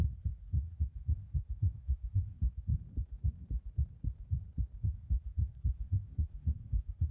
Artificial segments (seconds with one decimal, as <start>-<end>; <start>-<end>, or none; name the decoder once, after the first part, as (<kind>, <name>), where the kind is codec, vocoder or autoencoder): 0.0-2.7 (codec, SNAC); 4.8-7.1